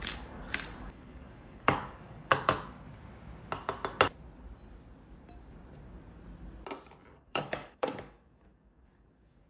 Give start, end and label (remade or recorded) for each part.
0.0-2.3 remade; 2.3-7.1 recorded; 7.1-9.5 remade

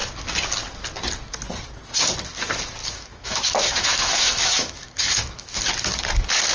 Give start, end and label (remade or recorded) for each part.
0.0-2.8 recorded; 2.8-5.6 remade; 5.6-6.5 recorded

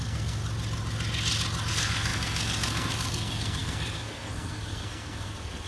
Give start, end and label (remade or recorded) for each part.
0.0-0.4 remade; 0.4-1.7 recorded; 1.7-5.7 remade